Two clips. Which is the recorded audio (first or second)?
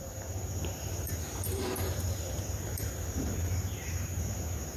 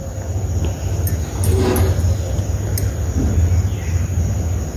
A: second